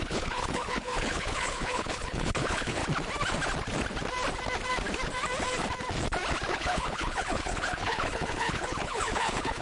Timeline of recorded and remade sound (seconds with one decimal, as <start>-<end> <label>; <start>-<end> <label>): 0.0-2.8 remade; 2.8-6.5 recorded; 6.5-9.6 remade